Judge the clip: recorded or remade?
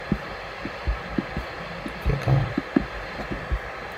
recorded